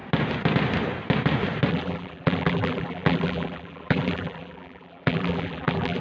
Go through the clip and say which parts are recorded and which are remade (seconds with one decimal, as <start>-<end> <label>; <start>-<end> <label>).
0.0-1.7 recorded; 1.7-6.0 remade